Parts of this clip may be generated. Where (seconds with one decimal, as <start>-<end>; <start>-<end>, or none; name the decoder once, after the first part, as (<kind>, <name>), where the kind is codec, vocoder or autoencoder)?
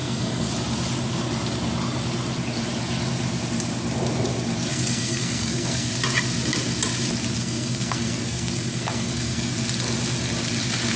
0.0-0.5 (codec, SNAC); 4.7-5.9; 7.4-9.5